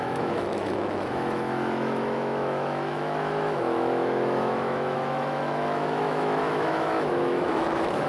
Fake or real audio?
fake